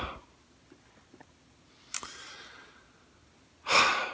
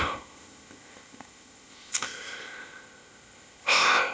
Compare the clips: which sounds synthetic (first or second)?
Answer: second